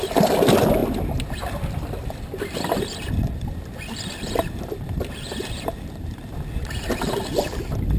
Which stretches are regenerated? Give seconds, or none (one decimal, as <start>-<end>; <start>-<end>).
0.0-0.8; 1.4-8.0